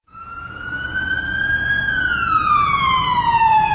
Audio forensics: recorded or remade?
remade